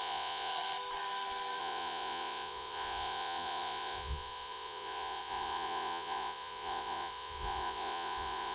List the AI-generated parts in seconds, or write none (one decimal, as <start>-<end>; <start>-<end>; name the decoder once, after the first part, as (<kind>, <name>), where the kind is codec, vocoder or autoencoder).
0.0-0.5 (vocoder, Vocos); 1.6-8.5